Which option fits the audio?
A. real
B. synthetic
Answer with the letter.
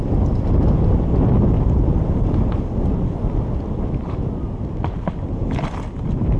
A